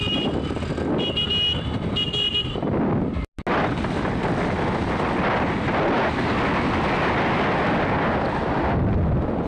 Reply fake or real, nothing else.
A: real